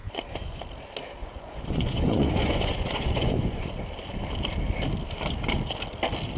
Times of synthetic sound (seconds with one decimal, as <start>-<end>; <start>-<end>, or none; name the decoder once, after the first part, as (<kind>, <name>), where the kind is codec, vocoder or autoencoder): 0.0-0.6 (vocoder, Vocos); 1.2-3.7